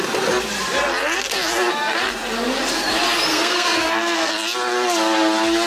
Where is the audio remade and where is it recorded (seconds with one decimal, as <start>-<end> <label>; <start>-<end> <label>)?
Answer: 0.0-3.3 recorded; 3.3-4.3 remade; 4.3-5.7 recorded